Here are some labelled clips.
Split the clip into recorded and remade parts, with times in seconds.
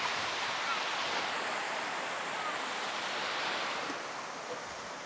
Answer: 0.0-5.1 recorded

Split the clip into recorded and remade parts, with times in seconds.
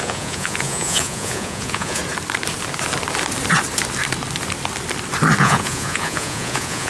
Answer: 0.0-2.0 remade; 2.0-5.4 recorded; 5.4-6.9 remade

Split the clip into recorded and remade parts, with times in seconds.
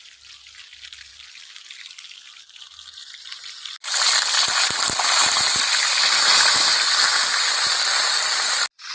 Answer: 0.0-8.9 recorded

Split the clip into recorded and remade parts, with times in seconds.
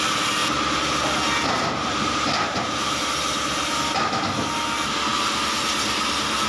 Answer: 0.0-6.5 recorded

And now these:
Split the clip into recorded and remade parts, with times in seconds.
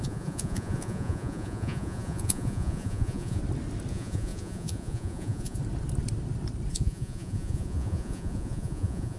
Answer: 0.0-3.4 remade; 3.4-3.9 recorded; 3.9-5.6 remade; 5.6-6.7 recorded; 6.7-9.2 remade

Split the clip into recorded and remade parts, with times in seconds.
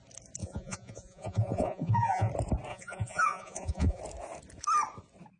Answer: 0.0-0.4 recorded; 0.4-2.3 remade; 2.3-2.7 recorded; 2.7-4.0 remade; 4.0-5.4 recorded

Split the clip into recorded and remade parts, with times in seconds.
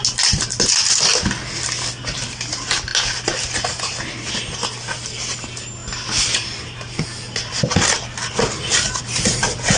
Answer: 0.0-9.8 recorded